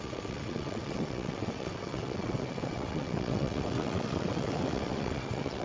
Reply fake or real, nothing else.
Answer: fake